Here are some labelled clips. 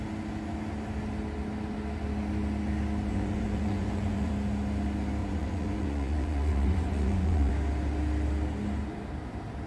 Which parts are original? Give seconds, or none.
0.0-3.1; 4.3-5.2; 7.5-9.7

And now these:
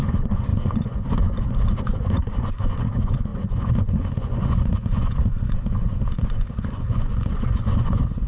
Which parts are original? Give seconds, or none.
none

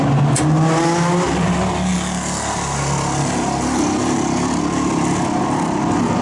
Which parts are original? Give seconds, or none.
0.0-6.2

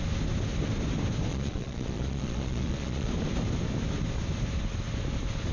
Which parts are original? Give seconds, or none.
0.0-1.3; 3.1-5.5

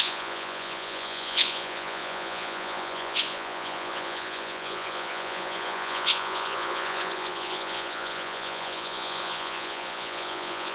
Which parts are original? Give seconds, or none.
none

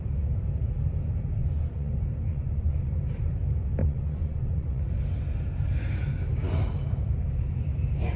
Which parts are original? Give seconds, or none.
0.0-1.4; 1.9-2.3; 2.9-3.8; 4.8-8.2

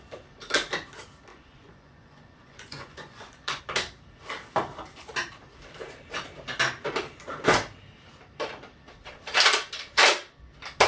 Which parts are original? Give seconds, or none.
0.0-1.3; 3.6-10.9

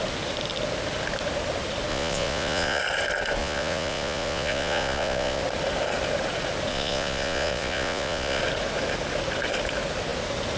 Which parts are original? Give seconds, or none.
0.0-1.9; 2.8-3.4; 5.4-6.7; 8.4-10.6